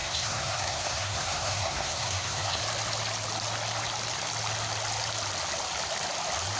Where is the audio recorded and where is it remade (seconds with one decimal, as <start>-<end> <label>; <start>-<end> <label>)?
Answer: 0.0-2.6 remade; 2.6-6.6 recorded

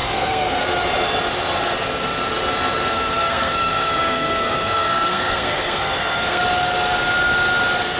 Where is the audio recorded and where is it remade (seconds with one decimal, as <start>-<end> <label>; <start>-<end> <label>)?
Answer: 0.0-0.6 remade; 0.6-2.9 recorded; 2.9-6.4 remade; 6.4-8.0 recorded

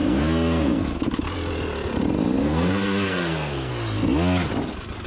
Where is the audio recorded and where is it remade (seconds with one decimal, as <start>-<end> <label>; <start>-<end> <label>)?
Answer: 0.0-0.9 remade; 0.9-2.4 recorded; 2.4-3.7 remade; 3.7-5.1 recorded